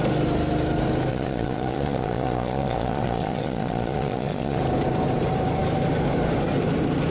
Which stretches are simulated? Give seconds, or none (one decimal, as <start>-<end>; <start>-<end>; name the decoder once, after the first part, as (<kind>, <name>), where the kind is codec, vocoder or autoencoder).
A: 1.1-4.6 (vocoder, Vocos)